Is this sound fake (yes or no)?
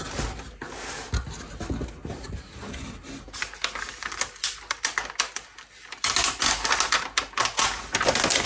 no